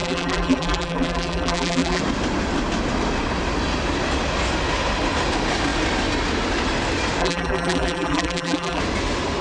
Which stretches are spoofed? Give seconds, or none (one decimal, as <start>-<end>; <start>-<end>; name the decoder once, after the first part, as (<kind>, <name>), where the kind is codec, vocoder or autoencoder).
0.0-2.0 (vocoder, BigVGAN v2); 7.2-8.8